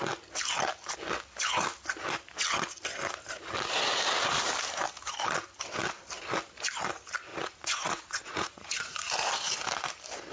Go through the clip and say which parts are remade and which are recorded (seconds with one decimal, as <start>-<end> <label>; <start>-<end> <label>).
0.0-7.3 recorded; 7.3-9.1 remade; 9.1-10.3 recorded